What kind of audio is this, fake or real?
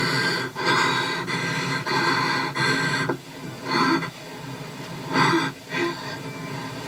real